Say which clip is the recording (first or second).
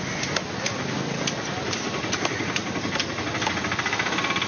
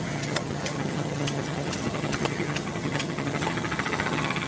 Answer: first